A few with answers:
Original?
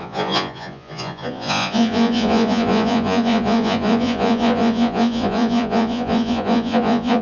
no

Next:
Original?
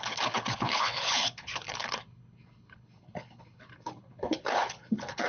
no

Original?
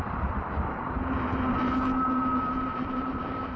no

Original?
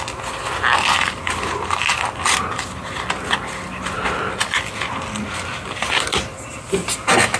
yes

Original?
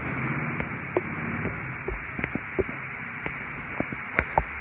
yes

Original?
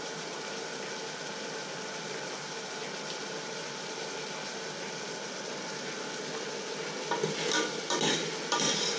yes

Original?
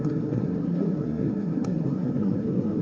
no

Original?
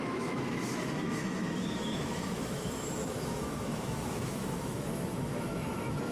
no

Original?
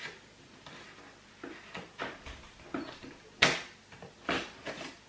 yes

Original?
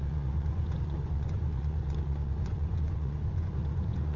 no